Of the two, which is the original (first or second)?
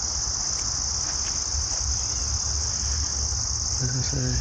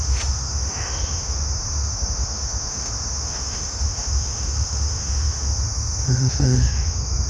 first